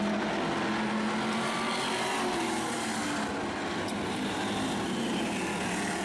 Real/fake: real